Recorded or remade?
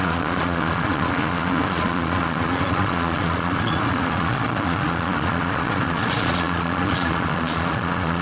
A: remade